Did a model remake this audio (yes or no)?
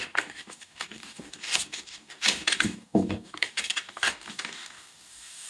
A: yes